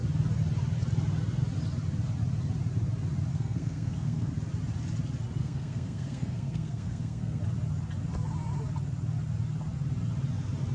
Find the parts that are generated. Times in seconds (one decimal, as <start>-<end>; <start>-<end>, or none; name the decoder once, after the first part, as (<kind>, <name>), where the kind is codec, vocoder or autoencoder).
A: 3.3-4.3 (codec, SNAC); 5.4-7.4